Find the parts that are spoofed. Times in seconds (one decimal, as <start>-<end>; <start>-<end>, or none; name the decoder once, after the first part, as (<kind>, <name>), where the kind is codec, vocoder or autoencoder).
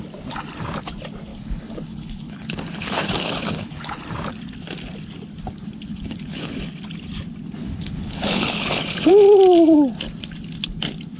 1.3-4.0 (codec, HILCodec); 5.9-6.7; 7.6-9.1